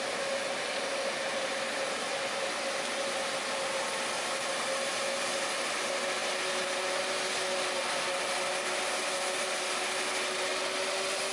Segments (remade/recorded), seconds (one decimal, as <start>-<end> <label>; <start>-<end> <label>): 0.0-11.3 recorded